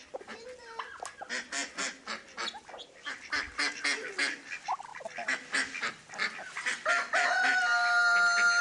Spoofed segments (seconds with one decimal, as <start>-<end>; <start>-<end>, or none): none